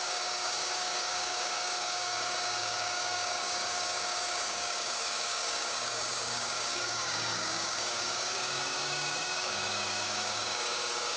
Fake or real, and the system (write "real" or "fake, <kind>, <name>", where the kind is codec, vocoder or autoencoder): fake, codec, DAC